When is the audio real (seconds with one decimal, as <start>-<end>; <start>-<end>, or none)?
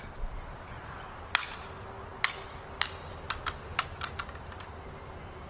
0.0-5.5